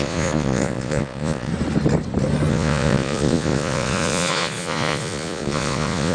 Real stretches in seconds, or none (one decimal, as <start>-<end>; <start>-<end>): 1.5-2.5